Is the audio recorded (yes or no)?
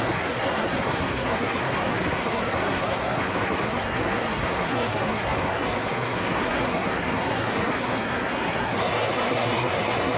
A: no